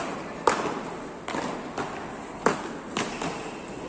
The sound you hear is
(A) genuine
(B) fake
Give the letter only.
A